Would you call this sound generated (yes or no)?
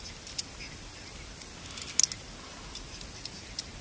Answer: no